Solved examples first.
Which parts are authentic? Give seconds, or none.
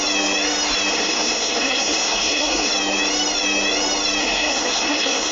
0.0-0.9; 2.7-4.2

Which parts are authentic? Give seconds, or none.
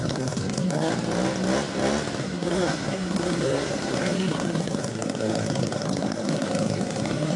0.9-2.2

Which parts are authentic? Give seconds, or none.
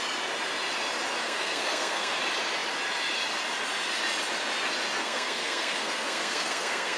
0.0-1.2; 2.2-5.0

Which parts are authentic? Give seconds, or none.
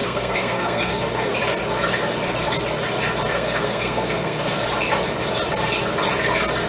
1.3-3.3; 4.6-6.7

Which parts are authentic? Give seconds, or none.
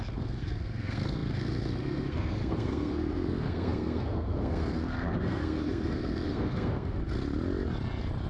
7.0-8.3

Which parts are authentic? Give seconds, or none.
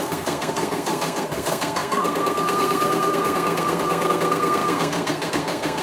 none